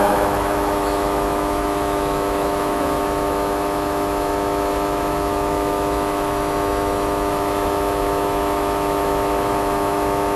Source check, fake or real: fake